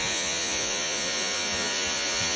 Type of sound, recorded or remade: remade